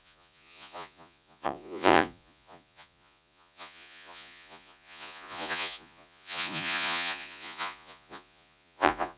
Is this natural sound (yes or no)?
no